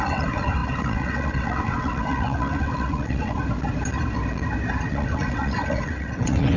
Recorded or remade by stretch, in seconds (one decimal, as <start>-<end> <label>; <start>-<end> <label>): 0.0-3.4 remade; 3.4-4.9 recorded; 4.9-6.6 remade